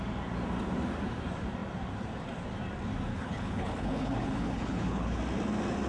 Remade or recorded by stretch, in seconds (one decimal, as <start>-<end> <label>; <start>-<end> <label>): 0.0-3.1 recorded; 3.1-5.2 remade; 5.2-5.9 recorded